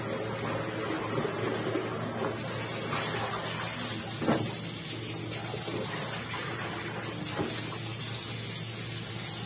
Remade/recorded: recorded